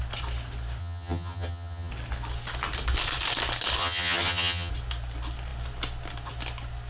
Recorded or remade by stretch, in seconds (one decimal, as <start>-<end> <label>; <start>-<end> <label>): 0.0-0.8 recorded; 0.8-1.9 remade; 1.9-3.8 recorded; 3.8-4.7 remade; 4.7-6.9 recorded